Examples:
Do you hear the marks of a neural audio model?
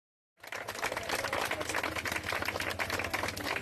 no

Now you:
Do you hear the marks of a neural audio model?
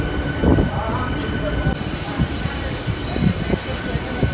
yes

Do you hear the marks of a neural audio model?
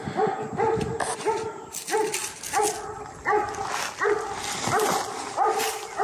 no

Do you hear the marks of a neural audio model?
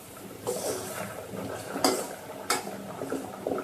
no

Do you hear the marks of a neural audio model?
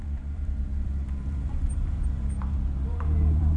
yes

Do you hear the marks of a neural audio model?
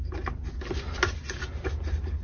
no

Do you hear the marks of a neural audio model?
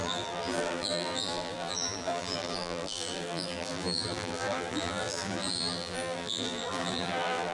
yes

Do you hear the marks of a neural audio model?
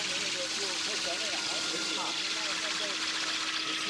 no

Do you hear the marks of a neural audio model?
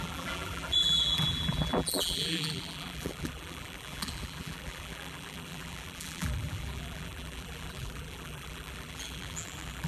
yes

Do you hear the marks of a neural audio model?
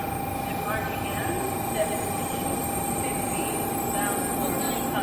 no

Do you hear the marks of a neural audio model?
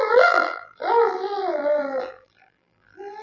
yes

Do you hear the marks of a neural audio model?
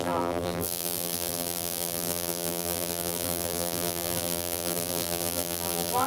yes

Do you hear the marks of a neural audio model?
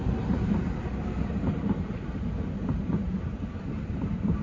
yes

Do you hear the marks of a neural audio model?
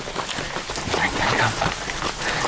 no